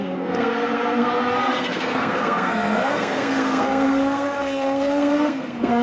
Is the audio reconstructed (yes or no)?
yes